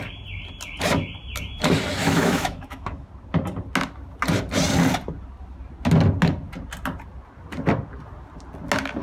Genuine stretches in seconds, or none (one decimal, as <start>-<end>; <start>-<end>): 0.0-2.0; 3.1-9.0